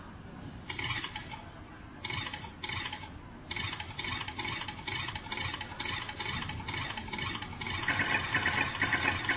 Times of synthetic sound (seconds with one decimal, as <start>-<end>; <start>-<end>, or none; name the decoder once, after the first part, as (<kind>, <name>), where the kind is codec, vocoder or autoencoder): none